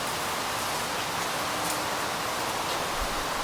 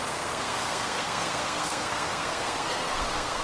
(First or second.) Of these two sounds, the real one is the first